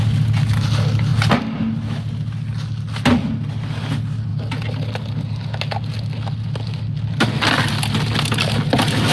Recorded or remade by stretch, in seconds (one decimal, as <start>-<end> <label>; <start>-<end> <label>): 0.0-9.1 recorded